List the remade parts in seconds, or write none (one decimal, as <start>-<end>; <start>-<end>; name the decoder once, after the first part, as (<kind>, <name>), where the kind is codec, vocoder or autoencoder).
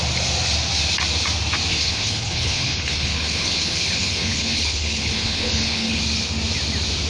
1.7-6.0 (codec, HILCodec)